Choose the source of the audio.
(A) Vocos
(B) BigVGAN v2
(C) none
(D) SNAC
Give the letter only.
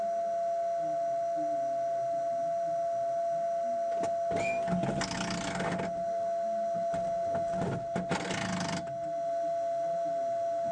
C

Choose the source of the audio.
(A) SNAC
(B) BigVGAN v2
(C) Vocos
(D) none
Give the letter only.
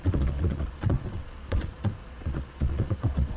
C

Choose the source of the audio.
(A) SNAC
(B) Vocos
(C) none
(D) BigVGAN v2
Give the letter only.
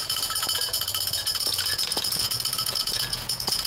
B